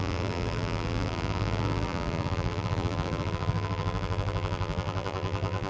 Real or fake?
fake